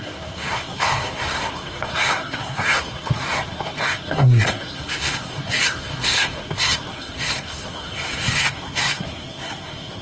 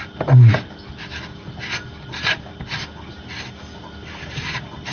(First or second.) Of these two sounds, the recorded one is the second